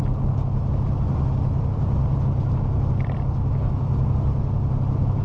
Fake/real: real